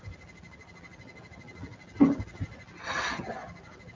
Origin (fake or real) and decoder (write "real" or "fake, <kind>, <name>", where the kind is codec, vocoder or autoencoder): real